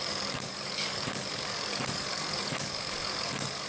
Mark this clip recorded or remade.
remade